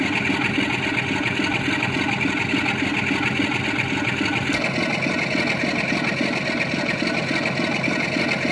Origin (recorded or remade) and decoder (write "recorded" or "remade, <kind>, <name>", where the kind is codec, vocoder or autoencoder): recorded